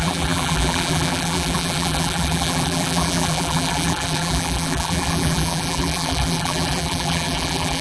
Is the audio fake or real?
fake